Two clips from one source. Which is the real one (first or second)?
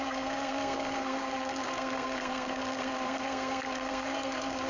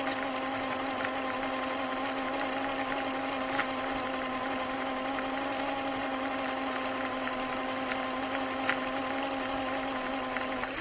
second